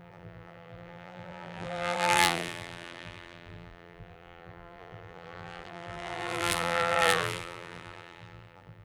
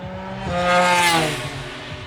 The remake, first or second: first